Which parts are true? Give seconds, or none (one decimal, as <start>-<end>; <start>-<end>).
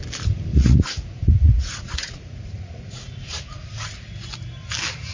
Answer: 0.0-0.5; 3.6-5.1